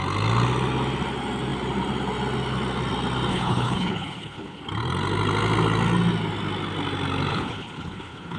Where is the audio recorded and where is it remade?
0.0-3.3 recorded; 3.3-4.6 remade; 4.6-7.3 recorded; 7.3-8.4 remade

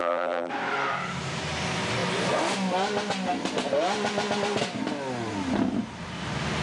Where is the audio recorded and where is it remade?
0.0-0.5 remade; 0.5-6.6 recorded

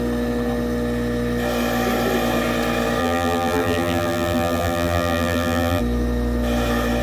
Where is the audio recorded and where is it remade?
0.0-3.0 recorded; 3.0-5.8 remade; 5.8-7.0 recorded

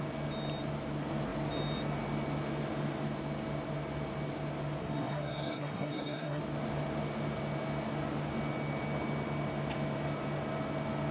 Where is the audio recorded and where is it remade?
0.0-4.8 recorded; 4.8-6.4 remade; 6.4-11.1 recorded

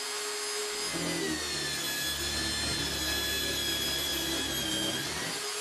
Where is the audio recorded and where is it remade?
0.0-5.6 recorded

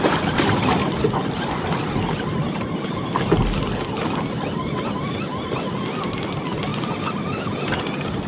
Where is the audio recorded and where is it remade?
0.0-8.3 recorded